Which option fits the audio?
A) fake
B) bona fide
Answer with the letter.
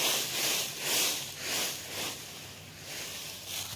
B